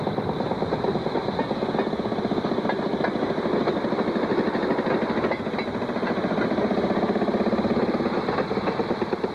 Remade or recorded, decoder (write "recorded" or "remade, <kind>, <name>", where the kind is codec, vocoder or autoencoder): recorded